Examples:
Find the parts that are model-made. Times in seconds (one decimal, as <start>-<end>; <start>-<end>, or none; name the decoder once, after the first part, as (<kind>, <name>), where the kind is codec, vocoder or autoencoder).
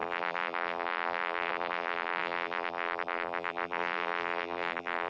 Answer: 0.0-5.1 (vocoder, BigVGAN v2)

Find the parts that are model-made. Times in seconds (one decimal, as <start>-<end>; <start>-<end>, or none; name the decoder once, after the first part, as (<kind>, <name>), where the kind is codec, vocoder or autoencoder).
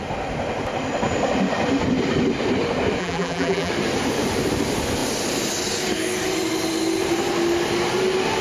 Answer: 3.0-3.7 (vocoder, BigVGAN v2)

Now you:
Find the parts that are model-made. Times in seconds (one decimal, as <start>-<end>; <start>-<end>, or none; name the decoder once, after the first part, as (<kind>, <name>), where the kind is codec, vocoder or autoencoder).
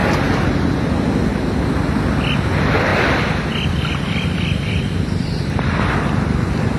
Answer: 2.9-5.9 (vocoder, BigVGAN v2)